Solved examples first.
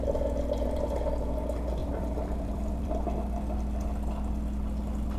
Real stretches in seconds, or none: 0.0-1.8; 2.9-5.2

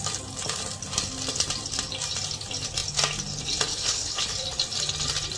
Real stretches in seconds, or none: 0.0-3.7; 4.3-5.4

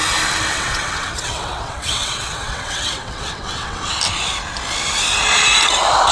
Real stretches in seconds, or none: 0.0-0.5; 3.9-6.1

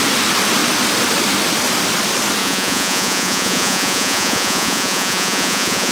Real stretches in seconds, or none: 0.0-2.4